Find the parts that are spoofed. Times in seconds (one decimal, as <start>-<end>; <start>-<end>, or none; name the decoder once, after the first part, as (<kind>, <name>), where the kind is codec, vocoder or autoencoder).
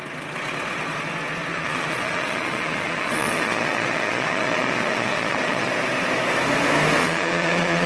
1.5-5.7 (vocoder, Vocos); 7.0-7.9